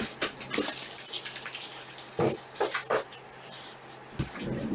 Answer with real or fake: real